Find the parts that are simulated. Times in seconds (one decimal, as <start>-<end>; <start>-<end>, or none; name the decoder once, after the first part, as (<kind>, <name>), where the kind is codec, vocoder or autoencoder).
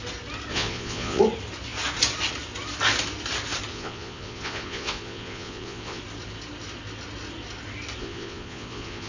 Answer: 0.5-1.2 (vocoder, Vocos); 3.7-6.0; 8.0-9.1